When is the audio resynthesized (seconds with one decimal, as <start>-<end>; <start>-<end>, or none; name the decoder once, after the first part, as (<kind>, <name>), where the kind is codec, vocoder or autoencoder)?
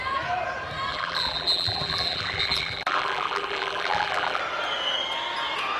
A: 0.9-4.4 (vocoder, BigVGAN v2)